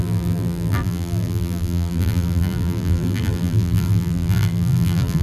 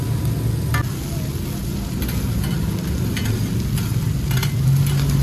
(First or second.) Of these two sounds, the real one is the second